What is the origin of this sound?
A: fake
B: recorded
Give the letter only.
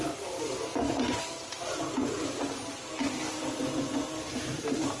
B